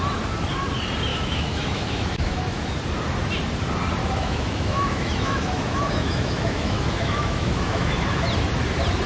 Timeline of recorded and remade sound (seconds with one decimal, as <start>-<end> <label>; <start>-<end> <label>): 0.0-1.1 recorded; 1.1-2.7 remade; 2.7-4.0 recorded; 4.0-8.2 remade; 8.2-9.1 recorded